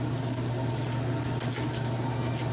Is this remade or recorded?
recorded